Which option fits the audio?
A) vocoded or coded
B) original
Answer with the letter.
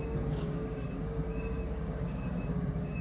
A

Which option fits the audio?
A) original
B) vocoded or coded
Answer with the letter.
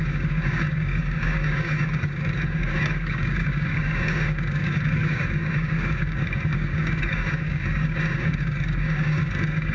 B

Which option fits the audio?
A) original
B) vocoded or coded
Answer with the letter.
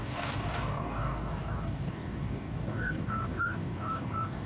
B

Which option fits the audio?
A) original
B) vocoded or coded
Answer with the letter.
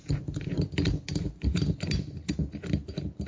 A